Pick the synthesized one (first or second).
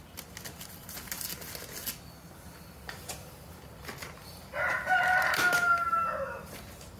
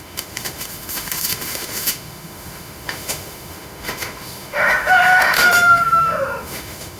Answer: second